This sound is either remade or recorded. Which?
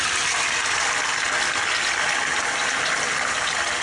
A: recorded